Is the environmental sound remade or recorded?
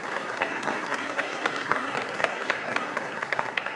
remade